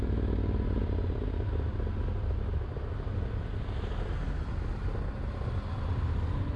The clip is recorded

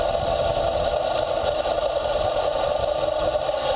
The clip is recorded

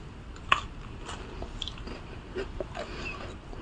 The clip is recorded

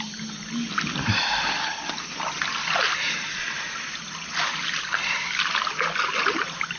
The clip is recorded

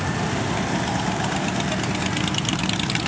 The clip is recorded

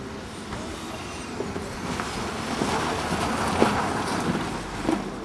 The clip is recorded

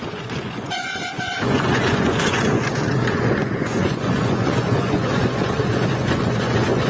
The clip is remade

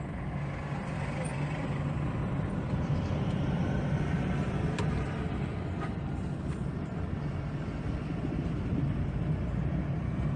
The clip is recorded